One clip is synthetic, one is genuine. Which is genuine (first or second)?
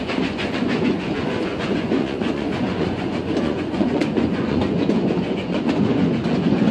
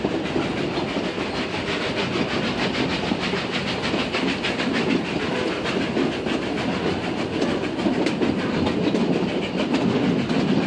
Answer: second